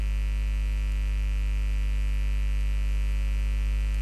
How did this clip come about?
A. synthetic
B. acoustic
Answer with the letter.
B